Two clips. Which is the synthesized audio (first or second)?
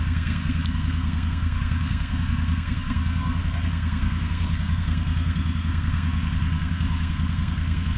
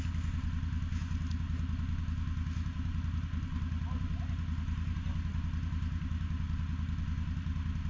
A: first